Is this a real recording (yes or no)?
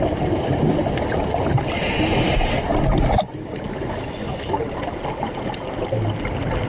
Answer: yes